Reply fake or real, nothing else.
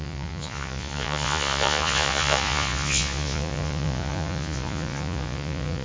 fake